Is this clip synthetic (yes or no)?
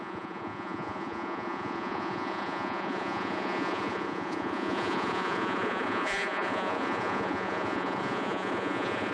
yes